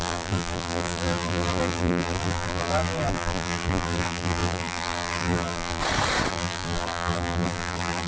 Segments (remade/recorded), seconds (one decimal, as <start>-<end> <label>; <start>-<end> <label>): 0.0-5.8 remade; 5.8-6.3 recorded; 6.3-8.1 remade